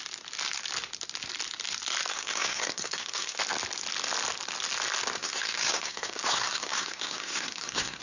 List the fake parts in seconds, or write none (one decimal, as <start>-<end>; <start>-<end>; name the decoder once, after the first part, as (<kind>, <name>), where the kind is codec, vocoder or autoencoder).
2.1-3.4 (codec, SNAC); 5.2-8.0

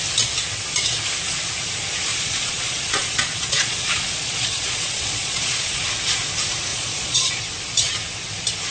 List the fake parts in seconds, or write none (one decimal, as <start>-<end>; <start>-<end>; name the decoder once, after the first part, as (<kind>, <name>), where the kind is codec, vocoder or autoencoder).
2.1-5.8 (vocoder, Vocos); 6.7-7.3

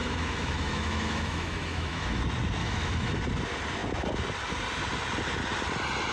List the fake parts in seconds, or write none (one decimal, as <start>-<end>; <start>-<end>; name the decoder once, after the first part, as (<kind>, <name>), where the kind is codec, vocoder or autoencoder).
0.0-2.2 (autoencoder, DAC-VAE); 2.6-3.2